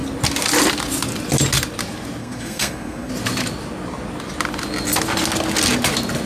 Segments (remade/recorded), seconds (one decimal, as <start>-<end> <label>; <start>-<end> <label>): 0.0-2.2 recorded; 2.2-3.1 remade; 3.1-6.3 recorded